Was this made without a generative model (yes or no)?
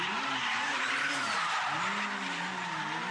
yes